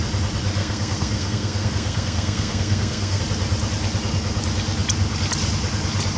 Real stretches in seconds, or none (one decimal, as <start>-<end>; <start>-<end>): 0.0-0.6; 3.2-6.2